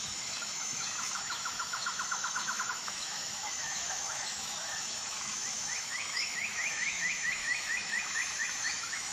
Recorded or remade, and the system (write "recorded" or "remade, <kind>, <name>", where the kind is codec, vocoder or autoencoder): remade, autoencoder, DAC-VAE